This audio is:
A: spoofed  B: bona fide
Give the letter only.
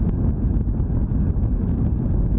B